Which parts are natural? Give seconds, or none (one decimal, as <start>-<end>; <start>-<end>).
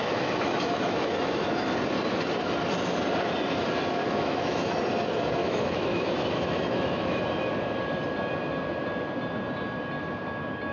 1.6-4.0; 4.8-5.4; 7.2-10.7